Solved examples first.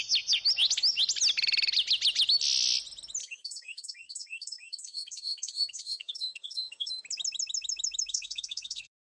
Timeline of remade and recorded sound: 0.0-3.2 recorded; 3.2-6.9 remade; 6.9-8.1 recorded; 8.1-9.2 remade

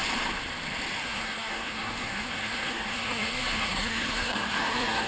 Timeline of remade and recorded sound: 0.0-1.0 recorded; 1.0-5.1 remade